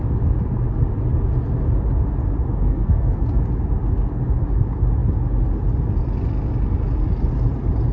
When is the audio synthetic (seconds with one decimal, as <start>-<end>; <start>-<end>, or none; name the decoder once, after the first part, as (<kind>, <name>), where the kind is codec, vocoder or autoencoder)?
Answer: 2.6-3.6 (codec, SNAC)